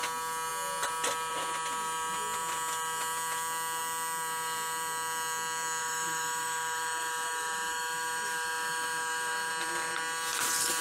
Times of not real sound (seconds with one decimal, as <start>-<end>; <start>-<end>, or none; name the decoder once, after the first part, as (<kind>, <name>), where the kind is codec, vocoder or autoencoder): 5.8-9.5 (autoencoder, DAC-VAE)